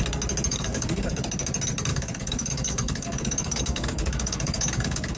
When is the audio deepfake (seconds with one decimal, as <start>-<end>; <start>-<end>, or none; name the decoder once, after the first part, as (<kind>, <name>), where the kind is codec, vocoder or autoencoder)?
0.5-1.1 (codec, DAC); 1.9-5.2